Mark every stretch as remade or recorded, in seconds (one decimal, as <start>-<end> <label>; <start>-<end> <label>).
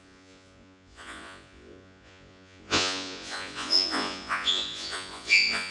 0.0-5.7 remade